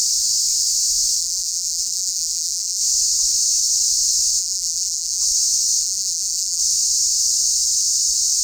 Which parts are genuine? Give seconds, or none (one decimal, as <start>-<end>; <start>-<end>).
0.0-1.2; 2.8-4.4; 5.2-5.8; 6.6-8.4